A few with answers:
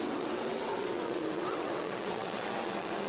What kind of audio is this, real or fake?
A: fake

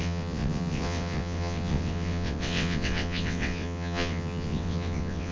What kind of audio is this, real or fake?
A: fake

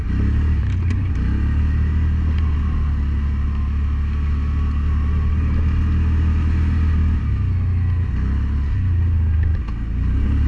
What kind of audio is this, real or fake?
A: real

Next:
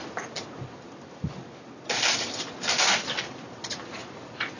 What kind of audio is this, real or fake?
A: real